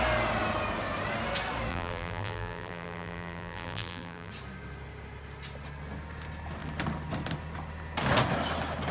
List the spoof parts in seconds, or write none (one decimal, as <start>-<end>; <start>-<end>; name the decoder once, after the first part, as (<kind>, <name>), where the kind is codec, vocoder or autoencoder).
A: 1.7-4.3 (vocoder, BigVGAN v2)